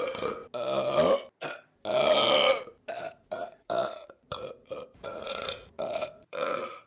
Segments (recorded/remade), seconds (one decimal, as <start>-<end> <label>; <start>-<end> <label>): 0.0-0.4 remade; 0.4-3.0 recorded; 3.0-6.9 remade